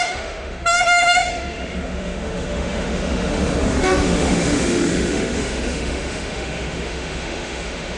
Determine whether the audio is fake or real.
fake